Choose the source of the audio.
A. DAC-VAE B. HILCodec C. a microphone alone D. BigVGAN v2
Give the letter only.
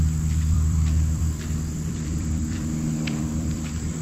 D